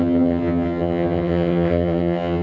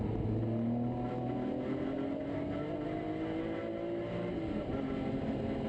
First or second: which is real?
second